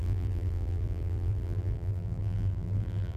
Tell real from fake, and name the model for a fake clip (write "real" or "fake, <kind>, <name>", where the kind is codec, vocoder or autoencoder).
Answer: fake, vocoder, BigVGAN v2